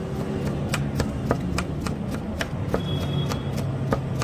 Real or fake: real